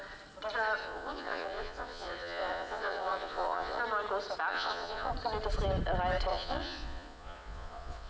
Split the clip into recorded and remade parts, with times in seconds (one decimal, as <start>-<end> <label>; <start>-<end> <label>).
0.0-0.8 recorded; 0.8-3.8 remade; 3.8-4.5 recorded; 4.5-5.1 remade; 5.1-6.3 recorded; 6.3-8.1 remade